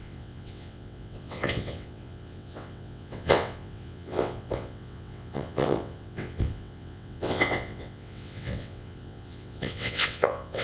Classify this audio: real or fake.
fake